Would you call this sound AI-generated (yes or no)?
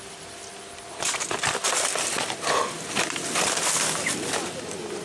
no